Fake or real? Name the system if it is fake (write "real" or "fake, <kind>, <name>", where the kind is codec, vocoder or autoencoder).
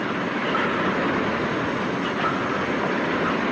real